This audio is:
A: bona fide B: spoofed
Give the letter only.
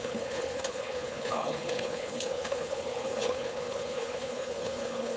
B